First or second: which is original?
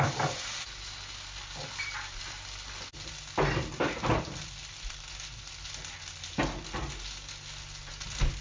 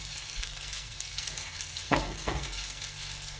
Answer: first